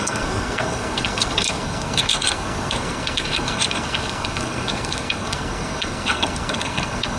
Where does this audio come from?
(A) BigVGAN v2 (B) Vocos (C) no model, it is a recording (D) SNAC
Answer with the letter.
D